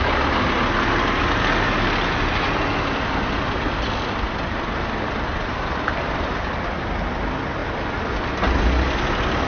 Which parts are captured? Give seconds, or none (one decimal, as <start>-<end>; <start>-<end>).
0.0-9.5